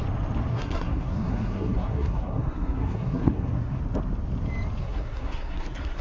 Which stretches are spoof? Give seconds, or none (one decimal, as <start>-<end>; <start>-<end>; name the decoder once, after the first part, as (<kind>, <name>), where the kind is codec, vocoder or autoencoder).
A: 0.5-3.8 (codec, SNAC); 4.8-6.0